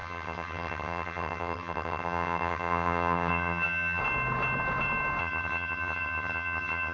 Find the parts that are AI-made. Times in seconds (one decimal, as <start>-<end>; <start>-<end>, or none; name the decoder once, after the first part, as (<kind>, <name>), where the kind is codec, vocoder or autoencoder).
0.0-4.0 (vocoder, HiFi-GAN); 5.2-6.9